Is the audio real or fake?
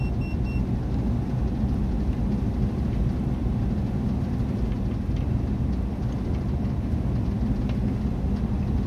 real